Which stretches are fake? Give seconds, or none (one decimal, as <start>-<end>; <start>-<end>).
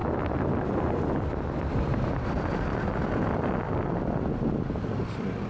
none